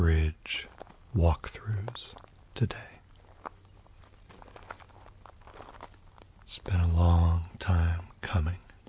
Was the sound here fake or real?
real